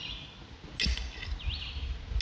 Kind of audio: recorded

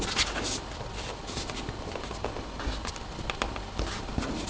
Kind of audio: recorded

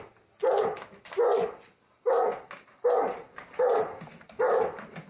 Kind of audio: recorded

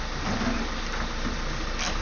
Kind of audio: recorded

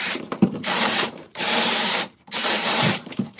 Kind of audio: remade